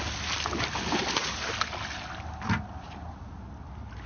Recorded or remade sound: recorded